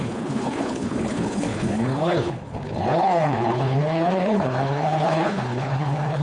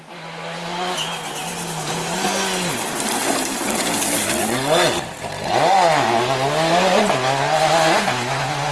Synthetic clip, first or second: first